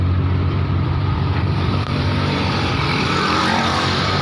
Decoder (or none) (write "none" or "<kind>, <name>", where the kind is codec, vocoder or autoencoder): vocoder, BigVGAN v2